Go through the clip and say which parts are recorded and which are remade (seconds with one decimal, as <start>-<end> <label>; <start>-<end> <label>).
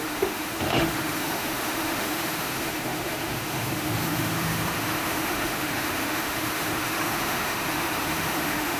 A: 0.0-8.8 remade